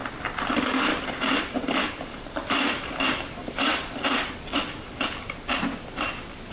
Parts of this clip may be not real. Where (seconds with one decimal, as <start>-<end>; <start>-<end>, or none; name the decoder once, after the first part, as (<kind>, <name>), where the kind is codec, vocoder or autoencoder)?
0.9-4.3 (vocoder, BigVGAN v2)